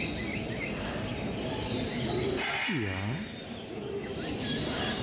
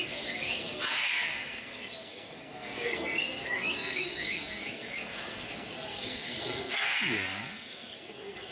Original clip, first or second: first